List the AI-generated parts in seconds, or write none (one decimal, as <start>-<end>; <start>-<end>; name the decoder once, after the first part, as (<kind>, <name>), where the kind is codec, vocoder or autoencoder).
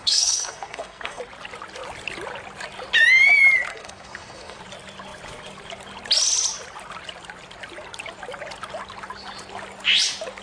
0.0-1.2 (codec, SNAC); 3.7-4.6